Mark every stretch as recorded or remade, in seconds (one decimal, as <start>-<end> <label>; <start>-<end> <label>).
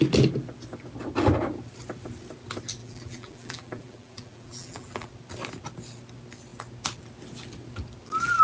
0.0-2.8 recorded; 2.8-5.1 remade; 5.1-8.4 recorded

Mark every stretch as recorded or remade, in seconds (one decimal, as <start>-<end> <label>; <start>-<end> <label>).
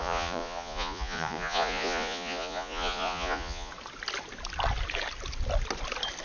0.0-3.7 remade; 3.7-6.2 recorded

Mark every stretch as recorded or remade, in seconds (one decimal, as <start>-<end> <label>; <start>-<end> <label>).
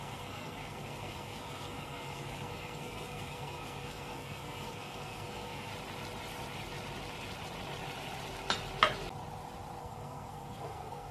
0.0-5.7 remade; 5.7-9.8 recorded; 9.8-11.1 remade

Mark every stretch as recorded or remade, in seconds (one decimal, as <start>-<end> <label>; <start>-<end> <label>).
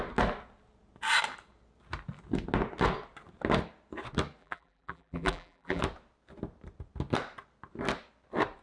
0.0-4.4 recorded; 4.4-5.8 remade; 5.8-8.6 recorded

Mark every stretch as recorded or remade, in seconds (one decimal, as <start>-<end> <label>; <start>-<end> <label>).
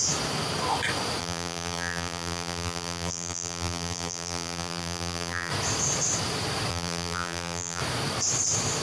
0.0-1.2 recorded; 1.2-5.5 remade; 5.5-6.7 recorded; 6.7-7.8 remade; 7.8-8.8 recorded